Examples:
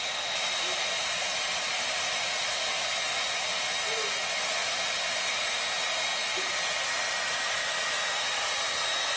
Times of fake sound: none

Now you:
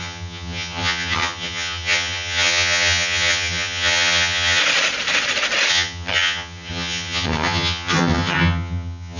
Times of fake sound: 0.0-4.6 (vocoder, HiFi-GAN); 5.7-9.2

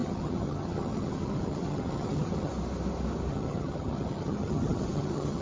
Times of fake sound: 0.0-2.5 (vocoder, HiFi-GAN); 3.3-5.4

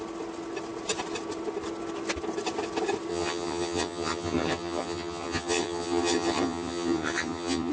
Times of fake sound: 3.1-7.7 (vocoder, HiFi-GAN)